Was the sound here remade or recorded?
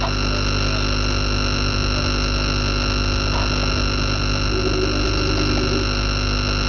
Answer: recorded